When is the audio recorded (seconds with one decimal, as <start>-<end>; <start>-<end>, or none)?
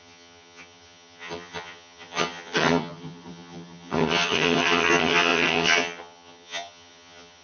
none